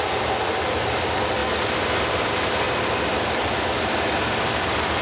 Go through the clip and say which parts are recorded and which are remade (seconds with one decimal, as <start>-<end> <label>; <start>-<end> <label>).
0.0-5.0 recorded